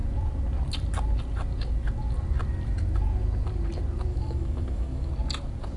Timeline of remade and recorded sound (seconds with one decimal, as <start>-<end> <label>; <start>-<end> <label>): 0.0-4.1 recorded; 4.1-5.1 remade; 5.1-5.8 recorded